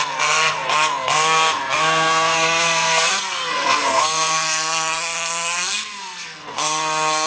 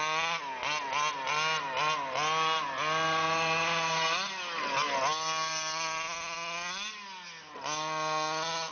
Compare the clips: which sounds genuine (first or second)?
second